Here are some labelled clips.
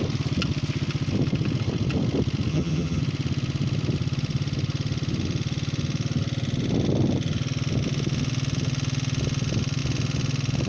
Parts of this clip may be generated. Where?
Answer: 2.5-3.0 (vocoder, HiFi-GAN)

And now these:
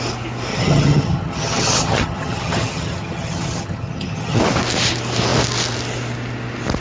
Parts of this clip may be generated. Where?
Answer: 0.5-4.4 (vocoder, HiFi-GAN)

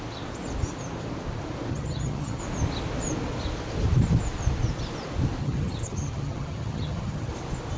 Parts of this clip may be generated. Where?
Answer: 1.7-2.4 (vocoder, HiFi-GAN); 5.4-7.3

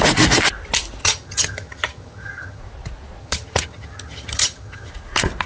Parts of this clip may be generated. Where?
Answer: 1.0-2.6 (vocoder, HiFi-GAN); 3.2-4.9

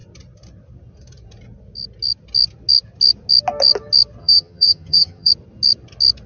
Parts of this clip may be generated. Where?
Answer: 4.2-5.3 (vocoder, HiFi-GAN)